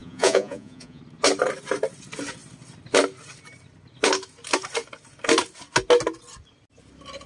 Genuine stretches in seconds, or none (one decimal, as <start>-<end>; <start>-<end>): 1.0-7.3